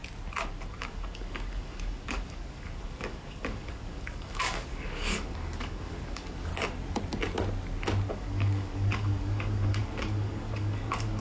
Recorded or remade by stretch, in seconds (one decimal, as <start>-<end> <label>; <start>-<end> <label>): 0.0-0.7 recorded; 0.7-6.5 remade; 6.5-8.1 recorded; 8.1-11.2 remade